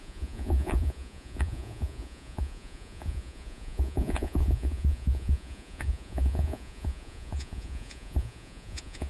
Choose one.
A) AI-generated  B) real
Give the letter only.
A